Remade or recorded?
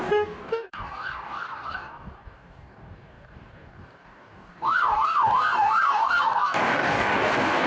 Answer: remade